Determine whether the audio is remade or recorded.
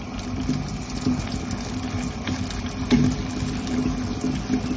recorded